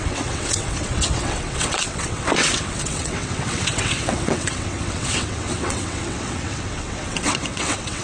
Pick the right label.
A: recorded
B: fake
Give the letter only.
B